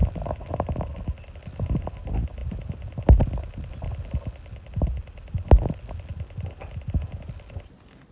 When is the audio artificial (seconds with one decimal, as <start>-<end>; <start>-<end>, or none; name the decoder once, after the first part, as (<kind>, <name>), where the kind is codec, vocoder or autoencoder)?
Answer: none